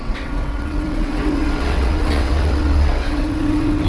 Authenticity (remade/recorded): remade